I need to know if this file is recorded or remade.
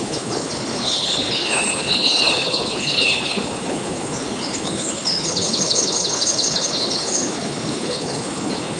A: remade